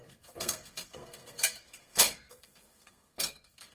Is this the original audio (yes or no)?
no